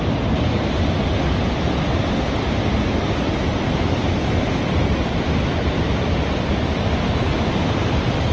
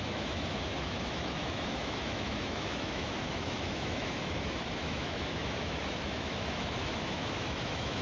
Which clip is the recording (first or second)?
first